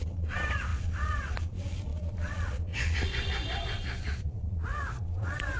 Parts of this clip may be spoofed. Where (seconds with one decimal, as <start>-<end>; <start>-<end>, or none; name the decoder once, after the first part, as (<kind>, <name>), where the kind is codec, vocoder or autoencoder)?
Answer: 0.0-5.6 (vocoder, Vocos)

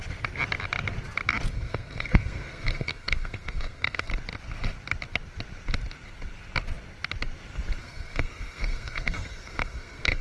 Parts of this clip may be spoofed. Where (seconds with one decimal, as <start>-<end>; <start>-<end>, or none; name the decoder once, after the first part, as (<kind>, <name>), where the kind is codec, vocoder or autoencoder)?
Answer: 1.5-4.1 (codec, SNAC); 7.8-10.2

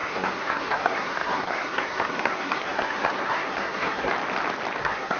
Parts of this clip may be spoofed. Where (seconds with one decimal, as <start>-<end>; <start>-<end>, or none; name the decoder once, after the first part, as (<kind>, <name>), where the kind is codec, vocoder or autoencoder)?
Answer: 0.0-4.1 (codec, SNAC); 4.8-5.2